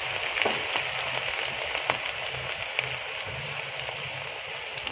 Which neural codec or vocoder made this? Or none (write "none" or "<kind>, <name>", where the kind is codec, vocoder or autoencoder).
none